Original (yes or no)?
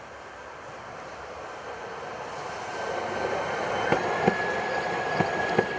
yes